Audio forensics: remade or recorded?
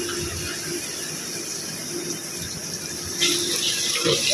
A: recorded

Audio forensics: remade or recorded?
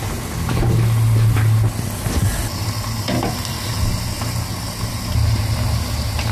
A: recorded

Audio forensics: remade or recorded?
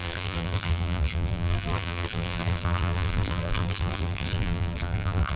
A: remade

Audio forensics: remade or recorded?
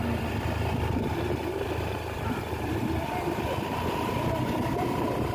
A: remade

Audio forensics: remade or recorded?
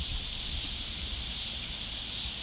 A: recorded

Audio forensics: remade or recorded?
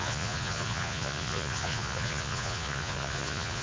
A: remade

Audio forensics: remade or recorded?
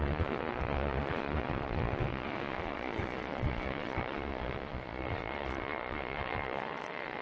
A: remade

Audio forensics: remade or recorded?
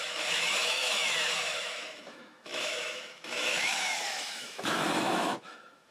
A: remade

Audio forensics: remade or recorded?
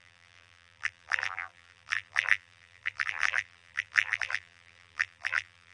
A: remade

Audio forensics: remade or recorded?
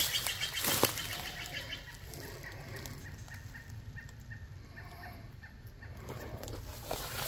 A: recorded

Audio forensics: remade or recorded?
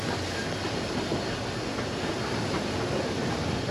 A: recorded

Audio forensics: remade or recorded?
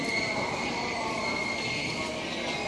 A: recorded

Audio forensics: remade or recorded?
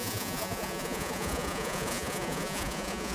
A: remade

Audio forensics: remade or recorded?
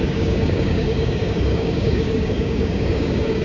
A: remade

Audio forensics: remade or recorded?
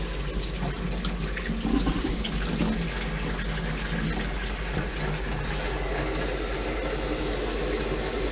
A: recorded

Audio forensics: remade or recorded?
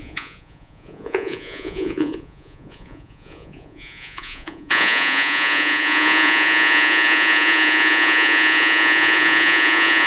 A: remade